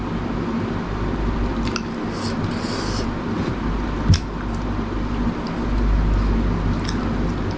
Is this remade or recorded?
recorded